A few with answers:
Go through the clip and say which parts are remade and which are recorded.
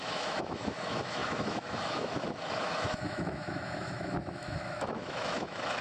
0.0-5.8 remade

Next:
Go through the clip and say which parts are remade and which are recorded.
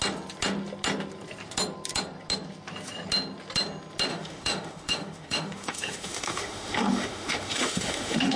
0.0-4.1 recorded; 4.1-8.4 remade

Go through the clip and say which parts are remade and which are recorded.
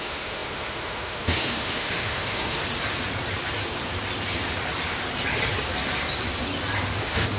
0.0-2.6 remade; 2.6-7.0 recorded; 7.0-7.4 remade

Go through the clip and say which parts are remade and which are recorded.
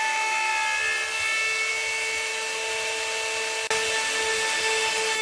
0.0-0.5 remade; 0.5-1.7 recorded; 1.7-2.3 remade; 2.3-5.2 recorded